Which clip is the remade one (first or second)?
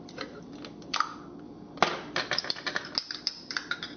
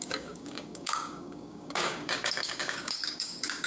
second